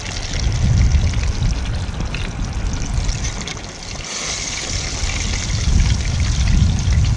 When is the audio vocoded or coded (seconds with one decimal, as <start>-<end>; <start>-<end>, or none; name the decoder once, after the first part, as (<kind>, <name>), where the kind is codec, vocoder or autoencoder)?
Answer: none